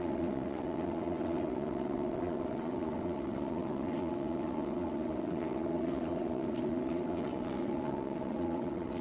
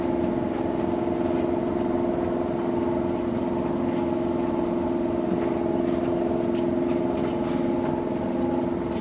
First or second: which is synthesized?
first